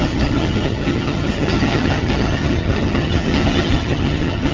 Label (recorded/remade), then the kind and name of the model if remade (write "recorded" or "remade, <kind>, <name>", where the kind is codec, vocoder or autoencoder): remade, vocoder, HiFi-GAN